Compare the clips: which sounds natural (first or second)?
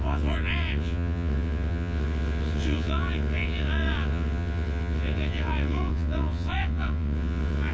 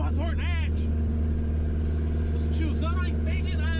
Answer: second